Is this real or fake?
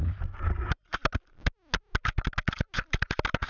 real